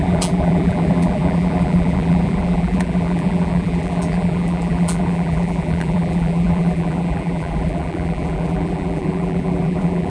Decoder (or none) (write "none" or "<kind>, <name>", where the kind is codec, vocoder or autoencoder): vocoder, BigVGAN v2